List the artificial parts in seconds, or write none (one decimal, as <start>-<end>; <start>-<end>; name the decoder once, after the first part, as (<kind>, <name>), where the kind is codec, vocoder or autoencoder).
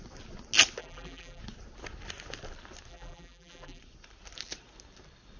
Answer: 0.8-1.4 (vocoder, BigVGAN v2); 2.9-3.8